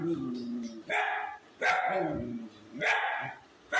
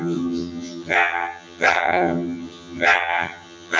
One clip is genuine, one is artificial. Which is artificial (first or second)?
second